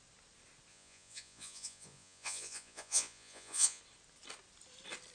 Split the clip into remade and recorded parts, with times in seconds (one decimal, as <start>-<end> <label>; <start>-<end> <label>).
0.0-0.7 recorded; 0.7-3.8 remade; 3.8-5.1 recorded